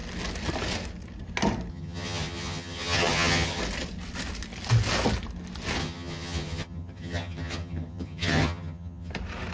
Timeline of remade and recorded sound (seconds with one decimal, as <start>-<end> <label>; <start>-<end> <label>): 0.0-1.7 recorded; 1.7-3.6 remade; 3.6-5.8 recorded; 5.8-9.1 remade; 9.1-9.5 recorded